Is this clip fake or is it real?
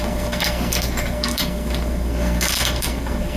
fake